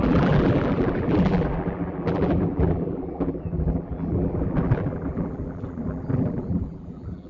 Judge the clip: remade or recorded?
remade